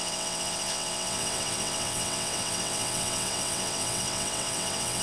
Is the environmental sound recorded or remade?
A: remade